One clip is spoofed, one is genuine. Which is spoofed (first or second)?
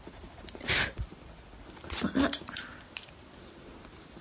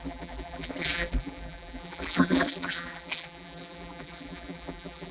second